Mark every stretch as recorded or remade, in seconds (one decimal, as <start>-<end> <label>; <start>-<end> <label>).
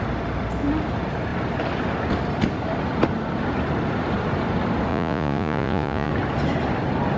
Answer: 0.0-4.9 recorded; 4.9-6.1 remade; 6.1-7.2 recorded